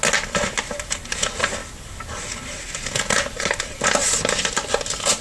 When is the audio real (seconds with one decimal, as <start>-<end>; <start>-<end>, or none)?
0.0-5.2